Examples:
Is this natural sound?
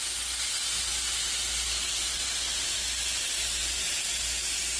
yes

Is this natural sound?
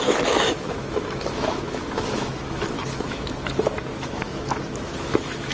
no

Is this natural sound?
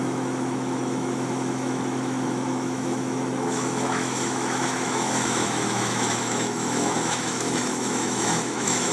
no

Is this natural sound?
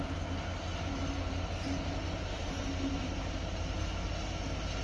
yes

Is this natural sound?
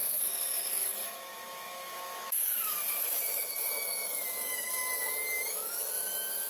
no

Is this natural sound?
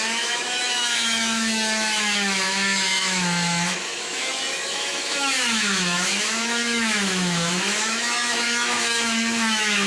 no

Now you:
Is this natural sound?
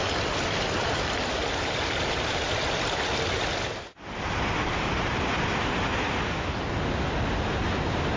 yes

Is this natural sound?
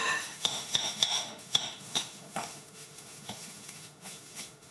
no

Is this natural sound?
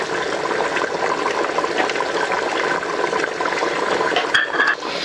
yes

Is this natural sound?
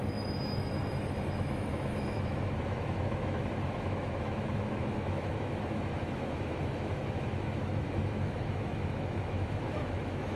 no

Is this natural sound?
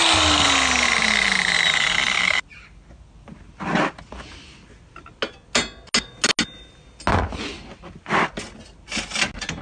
yes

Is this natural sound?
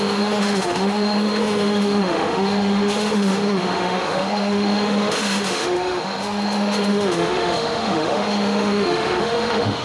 no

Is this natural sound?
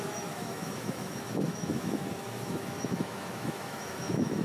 no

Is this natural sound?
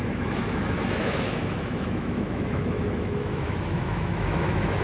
no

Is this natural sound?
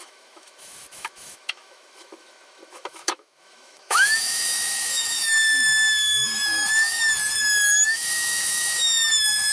no